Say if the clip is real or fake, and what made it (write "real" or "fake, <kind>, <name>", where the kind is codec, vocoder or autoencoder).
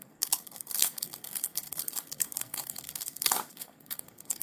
fake, codec, SNAC